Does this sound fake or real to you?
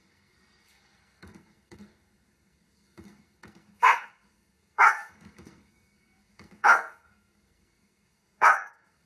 fake